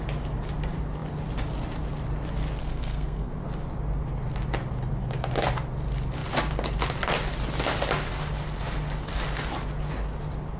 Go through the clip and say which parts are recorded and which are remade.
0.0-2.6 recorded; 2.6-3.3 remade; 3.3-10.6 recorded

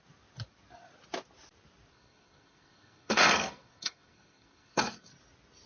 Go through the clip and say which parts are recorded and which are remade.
0.0-1.9 recorded; 1.9-5.1 remade; 5.1-5.7 recorded

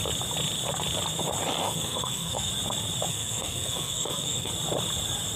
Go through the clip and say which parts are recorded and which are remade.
0.0-1.6 recorded; 1.6-2.5 remade; 2.5-3.1 recorded; 3.1-4.5 remade; 4.5-5.4 recorded

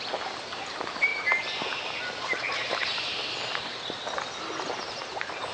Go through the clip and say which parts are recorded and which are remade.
0.0-5.5 recorded

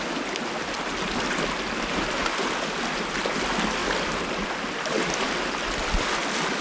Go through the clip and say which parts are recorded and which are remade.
0.0-6.6 recorded

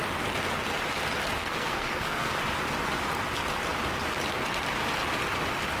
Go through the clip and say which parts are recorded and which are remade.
0.0-1.4 recorded; 1.4-2.4 remade; 2.4-5.8 recorded